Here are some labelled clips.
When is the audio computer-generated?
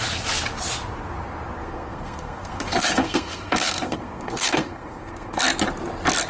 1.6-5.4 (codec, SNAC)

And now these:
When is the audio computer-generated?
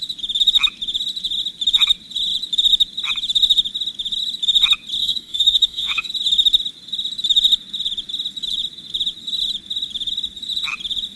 5.0-6.1 (autoencoder, DAC-VAE)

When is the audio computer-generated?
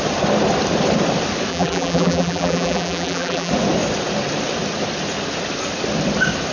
1.5-3.5 (vocoder, BigVGAN v2)